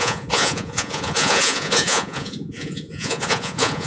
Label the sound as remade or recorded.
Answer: remade